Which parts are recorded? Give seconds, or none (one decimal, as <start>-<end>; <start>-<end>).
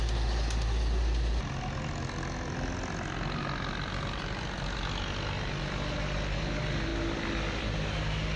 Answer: 0.0-8.4